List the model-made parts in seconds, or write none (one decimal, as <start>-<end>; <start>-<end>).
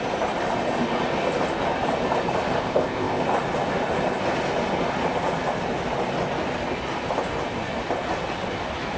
2.6-3.2